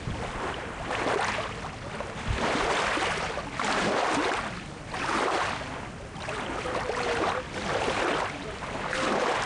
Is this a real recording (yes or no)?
yes